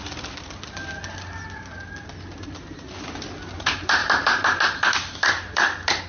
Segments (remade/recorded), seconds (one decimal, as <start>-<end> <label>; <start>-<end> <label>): 0.0-4.0 recorded; 4.0-4.6 remade; 4.6-6.1 recorded